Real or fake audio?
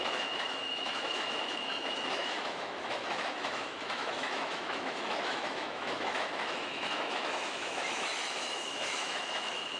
fake